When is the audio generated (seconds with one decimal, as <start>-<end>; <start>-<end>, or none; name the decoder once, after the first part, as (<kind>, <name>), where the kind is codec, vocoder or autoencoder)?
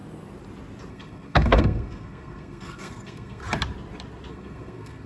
0.9-3.4 (codec, SNAC); 4.3-5.1